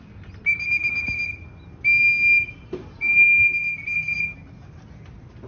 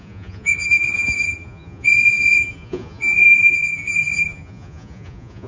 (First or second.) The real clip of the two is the first